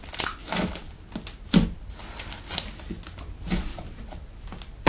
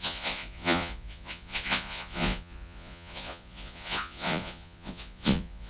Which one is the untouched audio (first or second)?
first